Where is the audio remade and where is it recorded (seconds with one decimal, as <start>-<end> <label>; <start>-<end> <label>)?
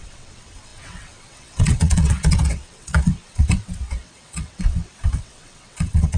0.0-6.2 remade